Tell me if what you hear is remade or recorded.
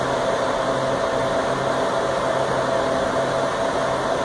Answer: recorded